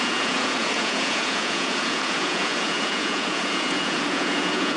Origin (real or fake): fake